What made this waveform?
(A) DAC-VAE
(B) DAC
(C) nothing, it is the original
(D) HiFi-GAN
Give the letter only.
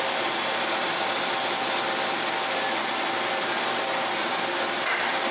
C